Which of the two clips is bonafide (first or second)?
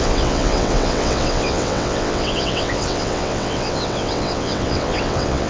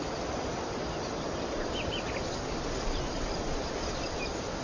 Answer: second